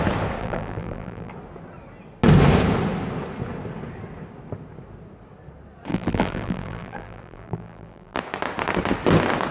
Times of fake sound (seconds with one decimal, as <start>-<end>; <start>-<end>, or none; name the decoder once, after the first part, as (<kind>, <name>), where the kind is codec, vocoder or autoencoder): 0.4-1.3 (vocoder, BigVGAN v2); 5.9-8.2